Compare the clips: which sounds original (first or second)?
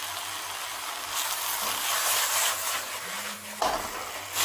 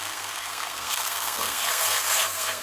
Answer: first